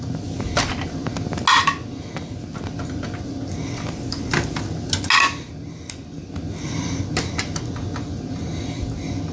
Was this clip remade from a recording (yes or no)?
no